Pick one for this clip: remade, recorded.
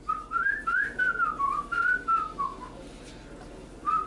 recorded